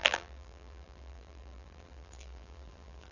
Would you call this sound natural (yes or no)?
no